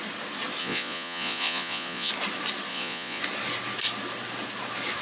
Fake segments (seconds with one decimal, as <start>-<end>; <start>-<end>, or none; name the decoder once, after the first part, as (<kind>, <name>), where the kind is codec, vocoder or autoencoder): 0.6-2.1 (vocoder, Vocos); 2.7-3.2